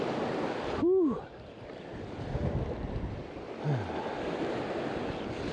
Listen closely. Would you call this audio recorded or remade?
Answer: recorded